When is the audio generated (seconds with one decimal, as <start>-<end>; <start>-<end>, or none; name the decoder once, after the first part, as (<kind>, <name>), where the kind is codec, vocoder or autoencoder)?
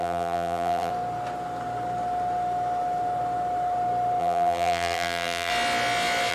0.0-0.9 (vocoder, BigVGAN v2); 4.2-5.5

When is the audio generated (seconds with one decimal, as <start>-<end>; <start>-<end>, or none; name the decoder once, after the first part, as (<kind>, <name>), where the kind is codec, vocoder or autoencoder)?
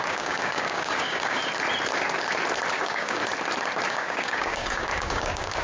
0.0-1.4 (codec, DAC); 2.7-3.2; 3.9-5.6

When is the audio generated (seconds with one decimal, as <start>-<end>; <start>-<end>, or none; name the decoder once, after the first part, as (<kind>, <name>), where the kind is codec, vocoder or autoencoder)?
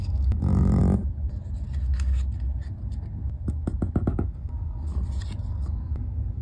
0.0-0.8 (codec, DAC); 4.1-4.9; 5.5-6.4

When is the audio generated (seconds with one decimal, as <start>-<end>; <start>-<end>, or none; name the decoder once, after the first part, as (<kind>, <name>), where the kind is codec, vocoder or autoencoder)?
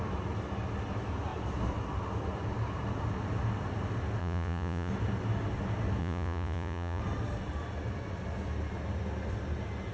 4.2-4.9 (vocoder, Vocos); 6.0-7.0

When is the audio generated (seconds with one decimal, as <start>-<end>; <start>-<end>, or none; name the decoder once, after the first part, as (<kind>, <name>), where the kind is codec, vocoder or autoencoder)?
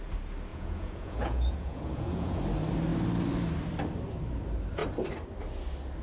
0.5-2.4 (vocoder, Vocos)